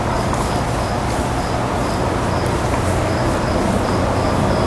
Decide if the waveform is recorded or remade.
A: recorded